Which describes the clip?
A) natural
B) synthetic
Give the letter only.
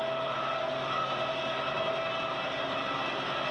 A